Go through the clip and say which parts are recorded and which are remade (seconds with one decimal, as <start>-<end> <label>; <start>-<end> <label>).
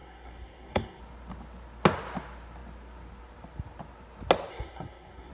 0.0-1.0 remade; 1.0-4.5 recorded; 4.5-5.3 remade